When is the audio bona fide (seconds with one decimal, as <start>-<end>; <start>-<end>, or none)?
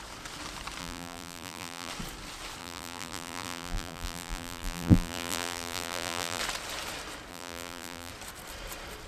0.0-0.8; 1.9-2.6; 6.4-7.3; 8.1-9.1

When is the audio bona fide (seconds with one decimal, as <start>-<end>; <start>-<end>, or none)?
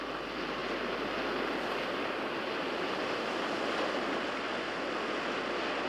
0.0-5.9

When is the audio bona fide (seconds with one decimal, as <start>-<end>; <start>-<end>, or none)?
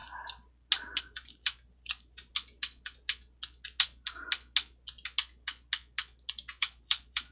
0.0-1.0; 2.3-6.6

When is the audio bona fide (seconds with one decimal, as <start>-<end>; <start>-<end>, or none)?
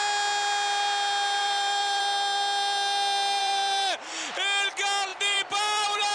0.0-1.4; 2.0-3.4; 4.1-5.1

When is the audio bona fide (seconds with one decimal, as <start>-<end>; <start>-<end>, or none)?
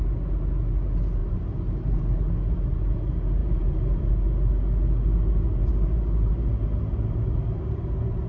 0.0-1.2; 2.0-3.4; 4.1-5.5; 6.4-8.3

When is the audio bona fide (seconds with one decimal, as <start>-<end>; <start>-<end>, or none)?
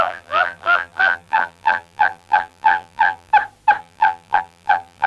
3.3-3.8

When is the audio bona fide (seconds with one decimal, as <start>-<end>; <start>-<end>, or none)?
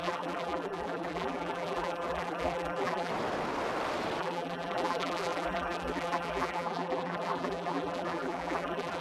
3.1-4.2